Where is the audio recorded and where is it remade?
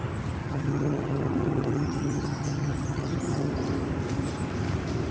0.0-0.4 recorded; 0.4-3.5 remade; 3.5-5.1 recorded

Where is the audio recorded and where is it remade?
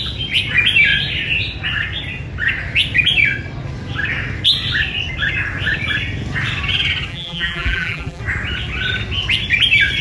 0.0-7.1 recorded; 7.1-8.2 remade; 8.2-10.0 recorded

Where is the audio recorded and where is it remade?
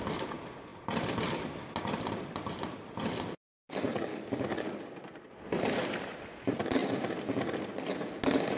0.0-4.1 recorded; 4.1-4.9 remade; 4.9-8.6 recorded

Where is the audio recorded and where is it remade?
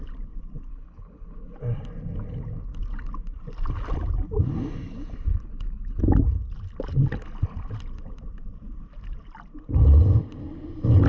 0.0-0.7 recorded; 0.7-1.6 remade; 1.6-5.3 recorded; 5.3-6.0 remade; 6.0-11.1 recorded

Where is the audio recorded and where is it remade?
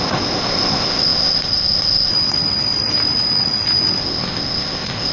0.0-2.1 remade; 2.1-4.0 recorded; 4.0-5.1 remade